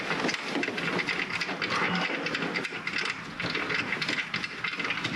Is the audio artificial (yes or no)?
no